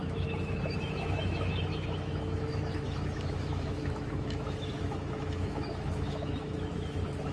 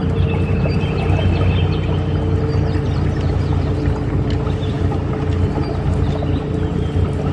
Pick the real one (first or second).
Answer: second